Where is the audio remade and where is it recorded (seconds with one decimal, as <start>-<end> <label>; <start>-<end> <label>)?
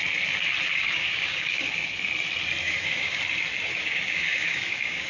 0.0-0.7 recorded; 0.7-1.9 remade; 1.9-2.6 recorded; 2.6-3.2 remade; 3.2-3.8 recorded; 3.8-5.1 remade